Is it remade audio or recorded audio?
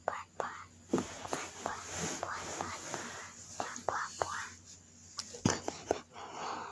recorded